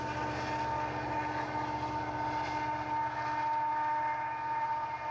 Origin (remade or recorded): recorded